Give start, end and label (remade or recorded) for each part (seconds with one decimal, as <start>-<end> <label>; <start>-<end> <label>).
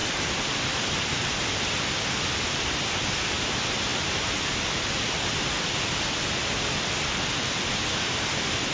0.0-8.7 recorded